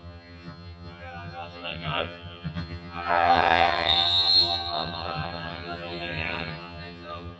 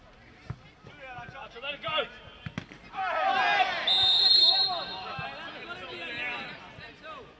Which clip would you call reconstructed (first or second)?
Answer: first